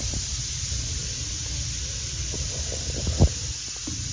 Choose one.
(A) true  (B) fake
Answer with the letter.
A